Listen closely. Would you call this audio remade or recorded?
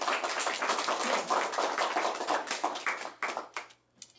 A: recorded